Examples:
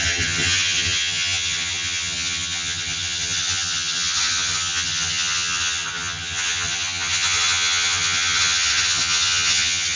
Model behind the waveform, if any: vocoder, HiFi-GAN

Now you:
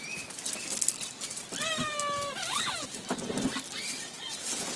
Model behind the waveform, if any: none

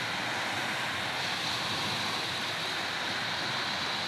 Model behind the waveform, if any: none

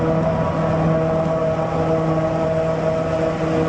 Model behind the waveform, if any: none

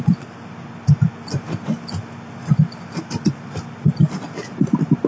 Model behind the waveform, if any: none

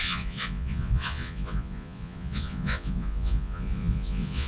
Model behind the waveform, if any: vocoder, Vocos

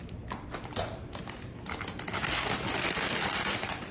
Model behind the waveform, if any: none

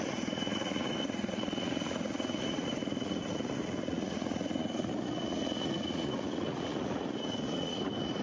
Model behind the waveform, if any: vocoder, Vocos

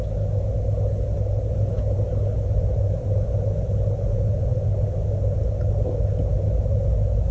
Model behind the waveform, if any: none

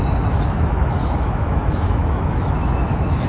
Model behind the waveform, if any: autoencoder, DAC-VAE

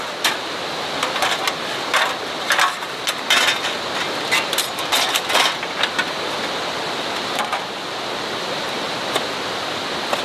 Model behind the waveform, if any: none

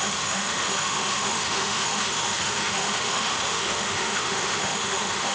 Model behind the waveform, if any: autoencoder, DAC-VAE